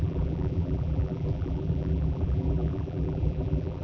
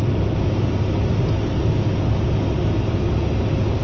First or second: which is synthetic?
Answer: first